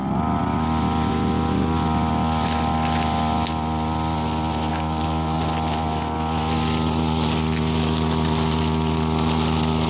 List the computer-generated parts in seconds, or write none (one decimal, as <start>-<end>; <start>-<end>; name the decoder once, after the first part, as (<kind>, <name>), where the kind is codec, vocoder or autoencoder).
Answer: 4.7-5.4 (codec, DAC)